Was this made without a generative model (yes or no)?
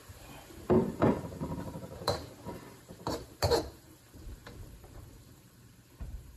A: no